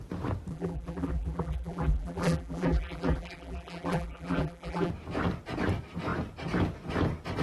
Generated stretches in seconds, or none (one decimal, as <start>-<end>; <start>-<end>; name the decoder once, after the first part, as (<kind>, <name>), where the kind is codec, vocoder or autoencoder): 0.5-4.9 (vocoder, BigVGAN v2)